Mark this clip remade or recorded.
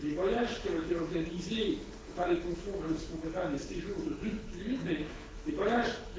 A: remade